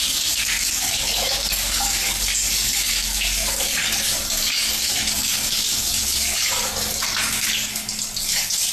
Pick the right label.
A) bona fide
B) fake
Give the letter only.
B